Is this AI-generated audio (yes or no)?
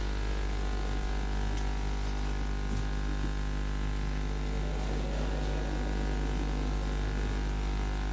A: no